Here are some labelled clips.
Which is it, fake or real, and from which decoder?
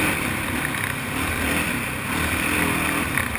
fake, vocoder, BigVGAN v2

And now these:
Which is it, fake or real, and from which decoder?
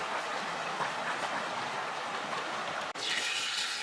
real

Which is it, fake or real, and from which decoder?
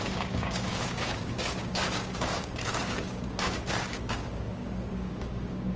fake, codec, DAC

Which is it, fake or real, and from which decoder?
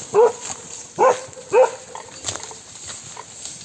real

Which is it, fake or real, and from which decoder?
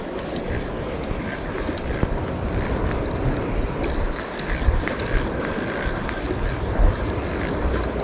real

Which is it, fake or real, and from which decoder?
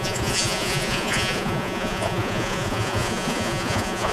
fake, vocoder, Vocos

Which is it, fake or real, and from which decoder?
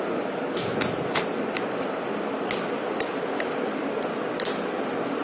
real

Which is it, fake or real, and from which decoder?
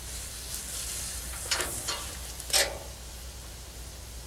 real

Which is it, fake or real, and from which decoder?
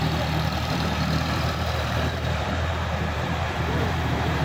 fake, vocoder, BigVGAN v2